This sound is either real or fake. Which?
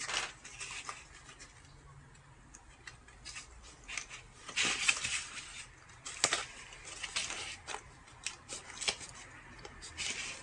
real